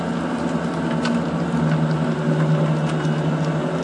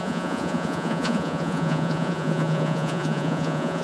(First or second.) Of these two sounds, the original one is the first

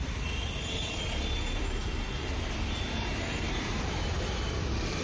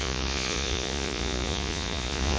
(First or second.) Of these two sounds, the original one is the first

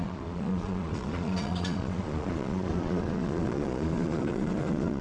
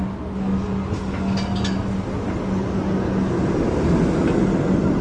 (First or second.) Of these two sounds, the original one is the second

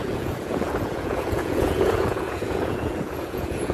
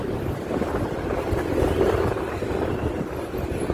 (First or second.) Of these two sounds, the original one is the second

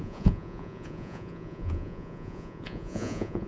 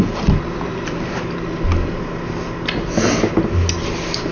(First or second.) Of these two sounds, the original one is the second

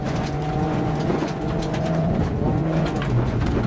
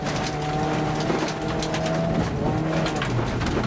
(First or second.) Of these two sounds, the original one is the second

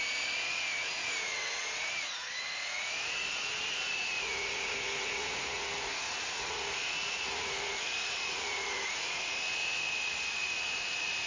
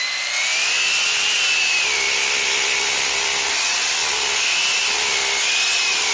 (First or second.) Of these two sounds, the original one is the second